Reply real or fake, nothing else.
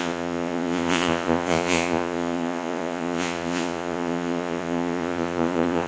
fake